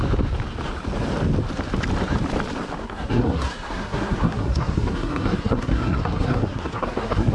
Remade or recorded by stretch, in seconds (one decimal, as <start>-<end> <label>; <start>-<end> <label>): 0.0-2.8 recorded; 2.8-7.3 remade